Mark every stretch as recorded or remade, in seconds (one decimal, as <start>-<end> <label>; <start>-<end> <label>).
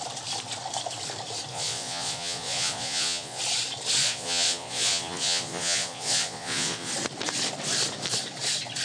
0.0-1.5 recorded; 1.5-3.4 remade; 3.4-4.0 recorded; 4.0-6.9 remade; 6.9-8.8 recorded